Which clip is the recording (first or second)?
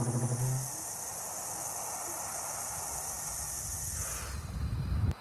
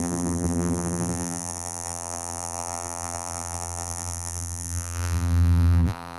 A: first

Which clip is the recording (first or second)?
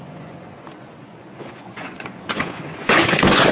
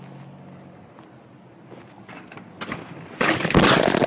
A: second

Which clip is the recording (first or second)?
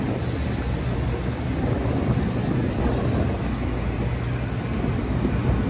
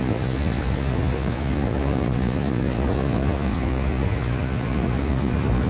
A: first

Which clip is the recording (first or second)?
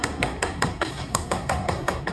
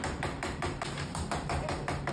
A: second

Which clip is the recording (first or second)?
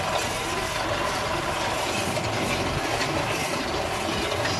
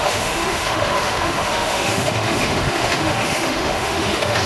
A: first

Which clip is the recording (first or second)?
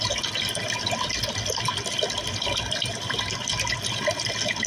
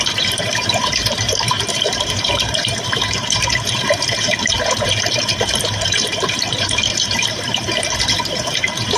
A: first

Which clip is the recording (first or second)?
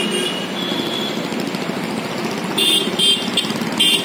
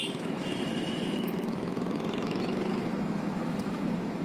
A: first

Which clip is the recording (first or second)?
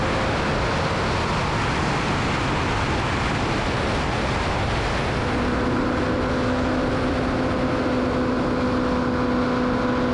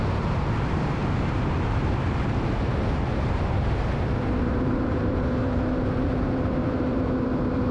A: first